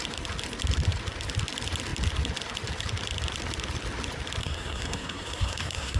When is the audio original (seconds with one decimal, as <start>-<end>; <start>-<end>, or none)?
0.0-4.4